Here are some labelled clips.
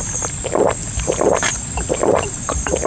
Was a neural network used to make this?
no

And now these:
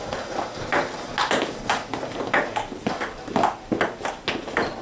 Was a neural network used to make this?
no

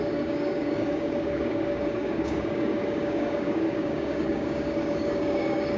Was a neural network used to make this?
yes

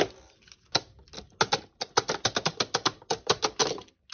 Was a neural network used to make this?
no